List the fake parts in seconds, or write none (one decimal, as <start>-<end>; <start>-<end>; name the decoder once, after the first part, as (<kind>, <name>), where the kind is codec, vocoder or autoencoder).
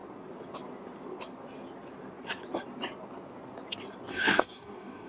4.1-5.1 (codec, DAC)